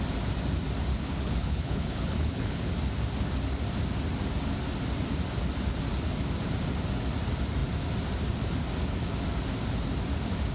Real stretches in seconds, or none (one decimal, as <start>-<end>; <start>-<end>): 0.0-0.9; 2.7-10.5